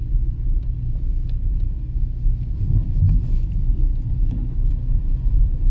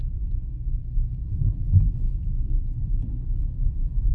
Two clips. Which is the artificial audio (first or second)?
second